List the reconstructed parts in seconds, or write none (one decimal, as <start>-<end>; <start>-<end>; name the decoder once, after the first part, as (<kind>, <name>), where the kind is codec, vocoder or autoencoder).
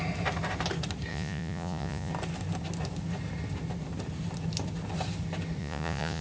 1.1-2.1 (vocoder, Vocos); 5.6-6.2